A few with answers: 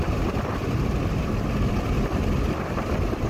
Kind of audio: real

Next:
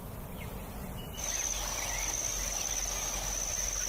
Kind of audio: real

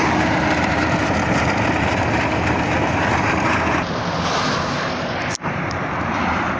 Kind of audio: fake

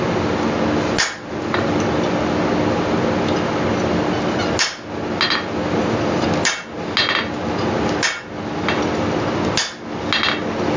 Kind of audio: real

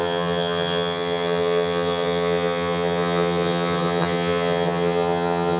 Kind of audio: fake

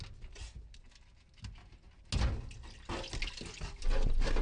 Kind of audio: real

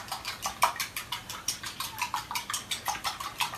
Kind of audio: fake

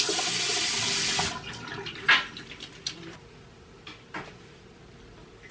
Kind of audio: real